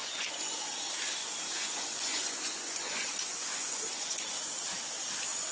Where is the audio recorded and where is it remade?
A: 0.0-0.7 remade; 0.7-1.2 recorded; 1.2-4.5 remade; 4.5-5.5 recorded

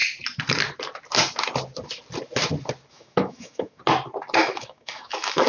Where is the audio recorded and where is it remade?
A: 0.0-2.9 recorded; 2.9-3.8 remade; 3.8-4.4 recorded; 4.4-5.5 remade

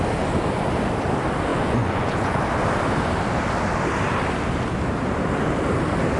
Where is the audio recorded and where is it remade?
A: 0.0-1.5 recorded; 1.5-2.4 remade; 2.4-6.2 recorded

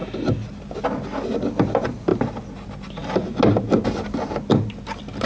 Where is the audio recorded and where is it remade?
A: 0.0-5.3 recorded